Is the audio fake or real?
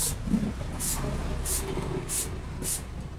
real